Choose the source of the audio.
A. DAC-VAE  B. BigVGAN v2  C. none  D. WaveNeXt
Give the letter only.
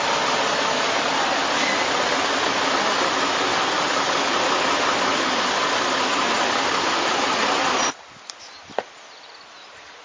C